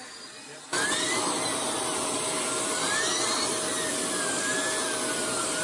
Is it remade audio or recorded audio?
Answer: remade